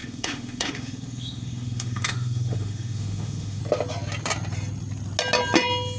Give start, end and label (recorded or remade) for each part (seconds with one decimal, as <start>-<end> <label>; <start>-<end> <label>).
0.0-3.6 remade; 3.6-6.0 recorded